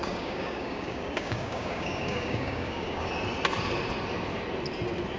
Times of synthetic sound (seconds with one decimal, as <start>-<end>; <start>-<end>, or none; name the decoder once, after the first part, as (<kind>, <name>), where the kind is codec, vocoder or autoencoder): 0.0-3.1 (codec, DAC)